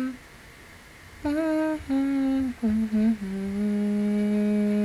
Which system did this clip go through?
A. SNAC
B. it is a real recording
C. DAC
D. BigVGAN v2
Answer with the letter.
B